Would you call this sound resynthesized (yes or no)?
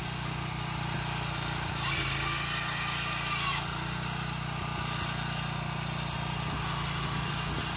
no